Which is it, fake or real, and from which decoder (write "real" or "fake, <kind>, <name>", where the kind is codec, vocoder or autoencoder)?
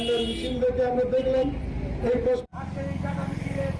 real